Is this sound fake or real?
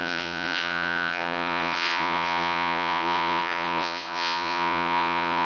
fake